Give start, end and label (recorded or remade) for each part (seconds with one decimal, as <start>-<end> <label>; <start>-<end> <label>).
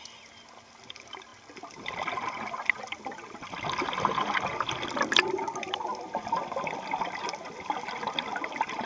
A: 0.0-8.9 recorded